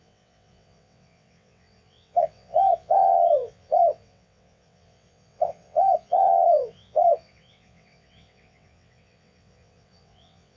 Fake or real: fake